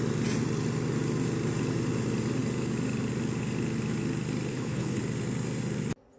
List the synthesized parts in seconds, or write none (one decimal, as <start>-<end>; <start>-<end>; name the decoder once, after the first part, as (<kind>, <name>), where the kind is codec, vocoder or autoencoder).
4.5-5.0 (codec, HILCodec)